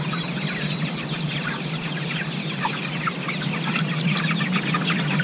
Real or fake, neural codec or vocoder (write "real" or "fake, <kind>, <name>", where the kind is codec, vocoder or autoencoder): real